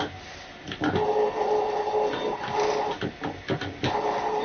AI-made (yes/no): no